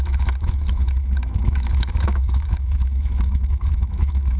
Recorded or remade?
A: remade